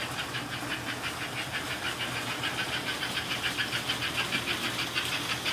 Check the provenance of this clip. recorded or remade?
recorded